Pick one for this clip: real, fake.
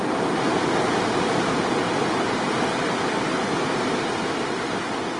real